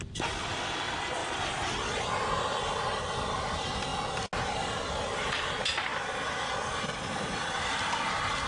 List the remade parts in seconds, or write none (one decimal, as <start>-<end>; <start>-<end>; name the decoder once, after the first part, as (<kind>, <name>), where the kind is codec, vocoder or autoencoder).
none